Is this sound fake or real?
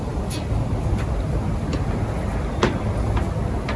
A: real